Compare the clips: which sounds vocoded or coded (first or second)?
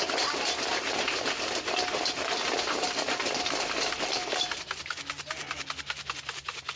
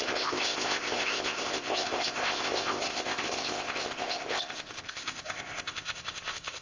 second